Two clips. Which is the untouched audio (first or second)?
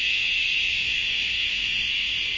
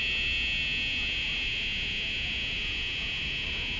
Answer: second